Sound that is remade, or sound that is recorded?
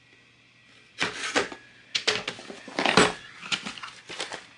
recorded